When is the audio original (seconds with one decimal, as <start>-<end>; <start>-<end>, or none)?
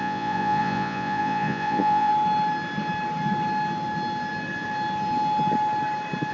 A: 2.1-6.3